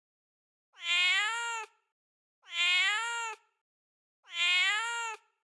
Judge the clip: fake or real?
real